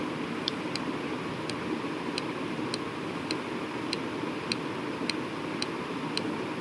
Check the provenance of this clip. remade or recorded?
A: recorded